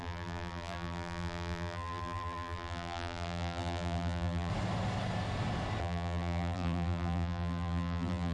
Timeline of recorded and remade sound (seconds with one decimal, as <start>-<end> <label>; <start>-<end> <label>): 0.0-4.5 remade; 4.5-5.8 recorded; 5.8-8.3 remade